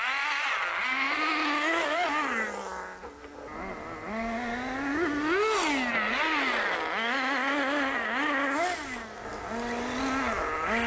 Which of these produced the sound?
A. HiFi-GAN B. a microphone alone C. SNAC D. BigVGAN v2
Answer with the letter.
B